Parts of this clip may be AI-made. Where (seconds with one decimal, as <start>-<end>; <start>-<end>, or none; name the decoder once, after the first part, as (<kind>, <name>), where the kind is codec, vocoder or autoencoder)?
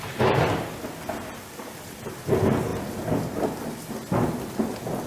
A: none